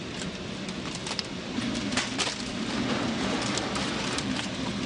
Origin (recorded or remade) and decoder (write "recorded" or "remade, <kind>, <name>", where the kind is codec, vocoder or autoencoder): remade, vocoder, BigVGAN v2